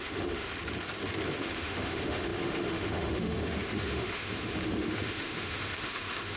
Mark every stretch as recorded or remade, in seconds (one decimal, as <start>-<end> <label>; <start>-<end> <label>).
0.0-0.5 remade; 0.5-1.5 recorded; 1.5-6.4 remade